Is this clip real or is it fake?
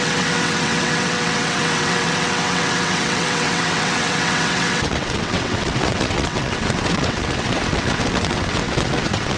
fake